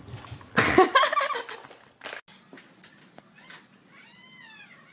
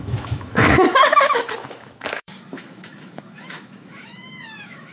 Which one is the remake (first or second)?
second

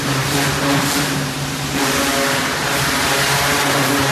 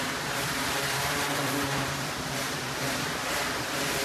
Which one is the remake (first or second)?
second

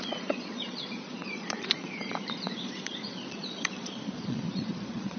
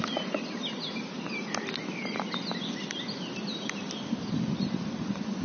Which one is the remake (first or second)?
first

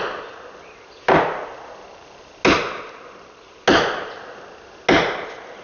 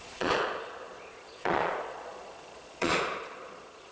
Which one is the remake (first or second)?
second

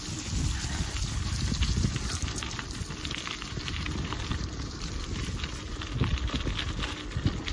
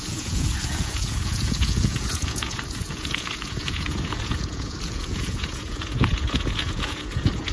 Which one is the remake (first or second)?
second